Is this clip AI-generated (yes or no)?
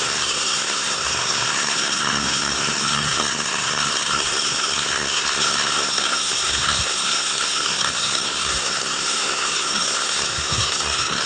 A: yes